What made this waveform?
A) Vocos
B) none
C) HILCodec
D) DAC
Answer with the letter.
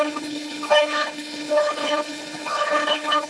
C